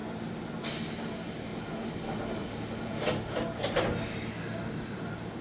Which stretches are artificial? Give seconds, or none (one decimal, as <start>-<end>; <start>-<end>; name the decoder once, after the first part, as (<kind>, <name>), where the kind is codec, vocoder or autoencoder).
none